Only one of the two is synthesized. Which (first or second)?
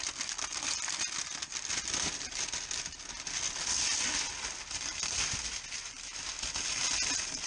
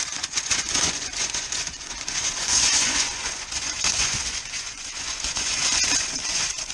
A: second